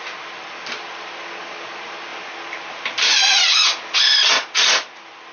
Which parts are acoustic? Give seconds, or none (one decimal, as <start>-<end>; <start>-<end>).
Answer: 0.0-5.3